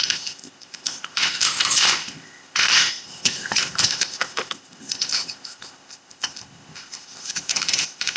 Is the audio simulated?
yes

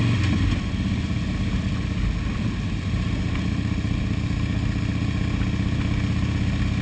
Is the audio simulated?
no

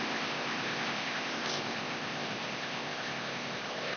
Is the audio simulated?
yes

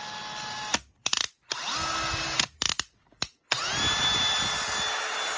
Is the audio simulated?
no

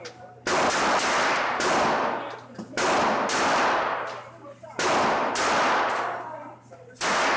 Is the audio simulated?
no